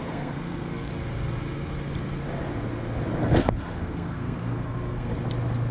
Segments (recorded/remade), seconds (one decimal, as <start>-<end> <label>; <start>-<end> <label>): 0.0-0.9 remade; 0.9-3.3 recorded; 3.3-5.1 remade; 5.1-5.7 recorded